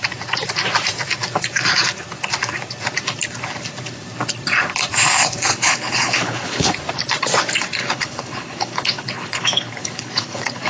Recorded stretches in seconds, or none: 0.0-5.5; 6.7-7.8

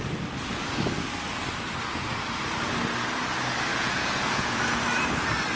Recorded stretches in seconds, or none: 0.0-3.7; 4.8-5.6